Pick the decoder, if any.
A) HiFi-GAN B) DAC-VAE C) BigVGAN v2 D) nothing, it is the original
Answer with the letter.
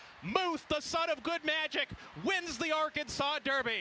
D